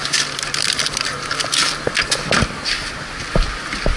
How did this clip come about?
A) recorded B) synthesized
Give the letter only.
A